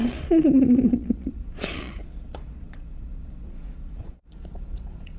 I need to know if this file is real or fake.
fake